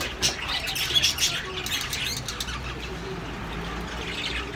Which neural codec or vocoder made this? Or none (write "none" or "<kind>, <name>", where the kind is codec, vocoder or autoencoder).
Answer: none